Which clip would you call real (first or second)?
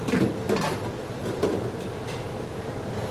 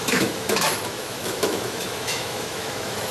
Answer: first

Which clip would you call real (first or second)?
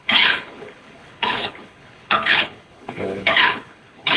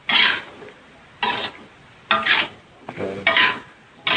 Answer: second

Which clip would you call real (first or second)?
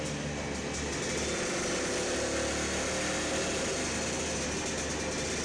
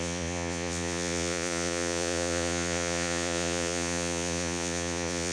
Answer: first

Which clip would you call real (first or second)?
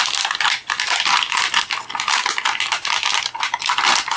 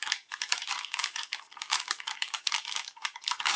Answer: first